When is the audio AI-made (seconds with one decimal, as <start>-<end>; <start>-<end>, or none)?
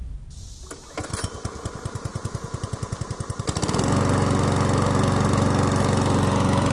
2.1-3.0